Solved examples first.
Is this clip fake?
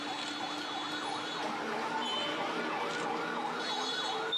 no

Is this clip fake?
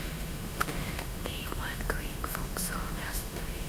yes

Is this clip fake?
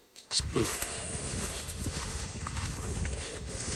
yes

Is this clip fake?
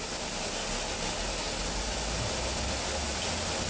no